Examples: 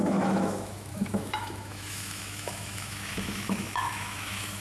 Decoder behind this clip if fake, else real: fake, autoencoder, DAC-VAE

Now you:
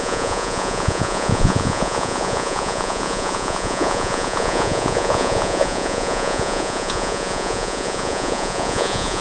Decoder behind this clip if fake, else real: fake, vocoder, Vocos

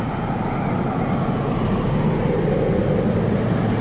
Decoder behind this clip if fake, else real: real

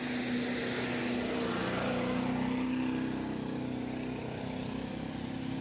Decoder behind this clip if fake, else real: real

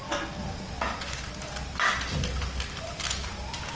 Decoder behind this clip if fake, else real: real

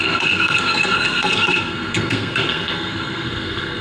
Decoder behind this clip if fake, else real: fake, codec, SNAC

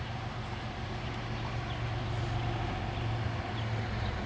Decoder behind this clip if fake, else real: real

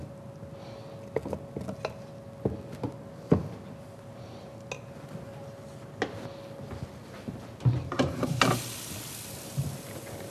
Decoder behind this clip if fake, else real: real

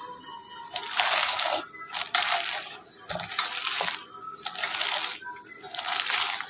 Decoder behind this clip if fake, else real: real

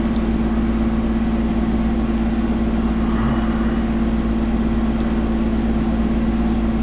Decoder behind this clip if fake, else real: real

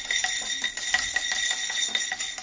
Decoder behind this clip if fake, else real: real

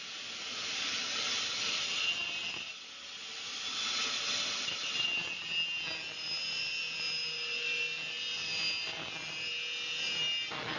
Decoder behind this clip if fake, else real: real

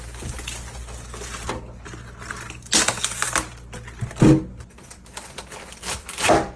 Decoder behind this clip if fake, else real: real